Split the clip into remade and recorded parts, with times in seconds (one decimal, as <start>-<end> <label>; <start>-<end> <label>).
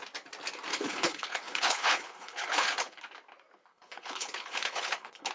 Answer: 0.0-0.7 recorded; 0.7-3.0 remade; 3.0-3.7 recorded; 3.7-5.3 remade